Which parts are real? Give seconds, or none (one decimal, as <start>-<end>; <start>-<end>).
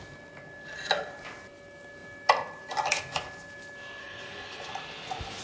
0.0-4.0; 4.7-5.4